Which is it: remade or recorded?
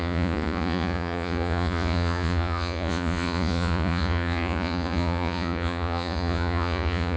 remade